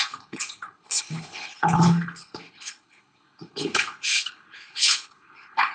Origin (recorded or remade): remade